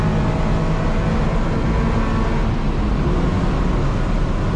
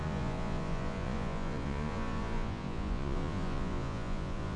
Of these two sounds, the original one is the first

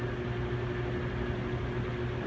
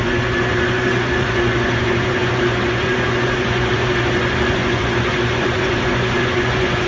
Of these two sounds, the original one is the first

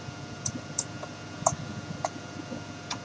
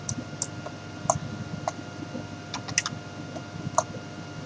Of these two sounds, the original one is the second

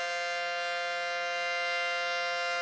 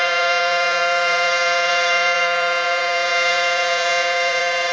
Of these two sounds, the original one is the first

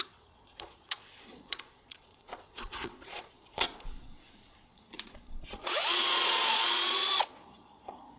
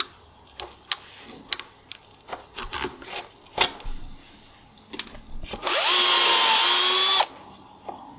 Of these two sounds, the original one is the second